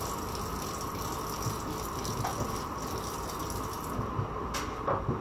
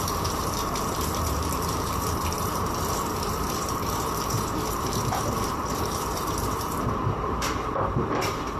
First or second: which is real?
first